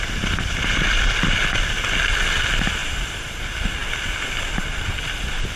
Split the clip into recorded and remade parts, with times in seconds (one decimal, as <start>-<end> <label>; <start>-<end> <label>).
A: 0.0-2.8 recorded; 2.8-3.4 remade; 3.4-5.6 recorded